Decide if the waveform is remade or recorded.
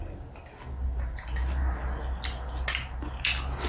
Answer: recorded